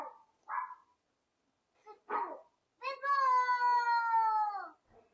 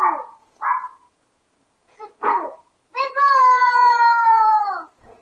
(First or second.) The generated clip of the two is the second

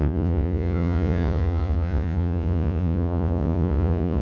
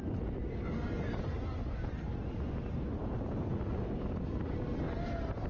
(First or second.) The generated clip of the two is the first